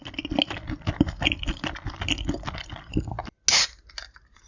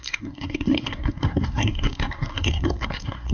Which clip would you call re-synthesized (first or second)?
second